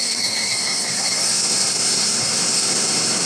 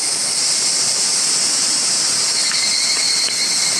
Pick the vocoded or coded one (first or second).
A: first